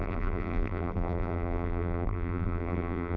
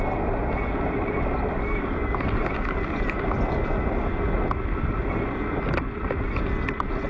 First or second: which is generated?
first